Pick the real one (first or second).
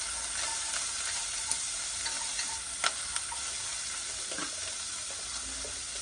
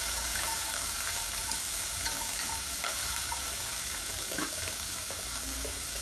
first